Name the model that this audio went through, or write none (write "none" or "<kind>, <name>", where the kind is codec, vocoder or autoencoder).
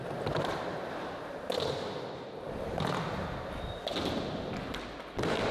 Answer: none